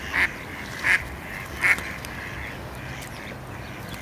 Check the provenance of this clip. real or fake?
real